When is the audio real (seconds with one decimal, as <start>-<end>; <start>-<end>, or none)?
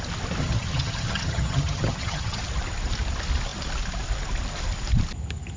0.0-0.4; 2.4-5.6